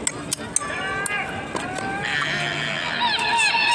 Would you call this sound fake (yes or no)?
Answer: no